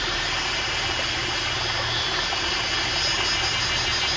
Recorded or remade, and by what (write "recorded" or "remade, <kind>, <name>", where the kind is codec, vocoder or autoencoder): recorded